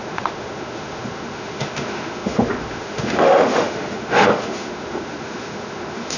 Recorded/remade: remade